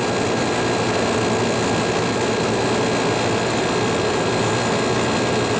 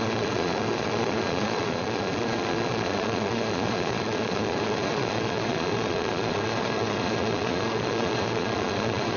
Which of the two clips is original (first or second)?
first